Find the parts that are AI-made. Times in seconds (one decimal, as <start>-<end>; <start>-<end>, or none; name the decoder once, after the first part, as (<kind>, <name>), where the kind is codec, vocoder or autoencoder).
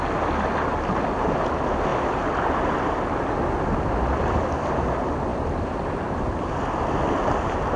none